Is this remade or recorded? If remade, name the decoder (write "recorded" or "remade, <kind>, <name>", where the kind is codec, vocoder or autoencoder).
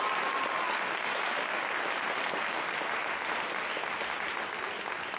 recorded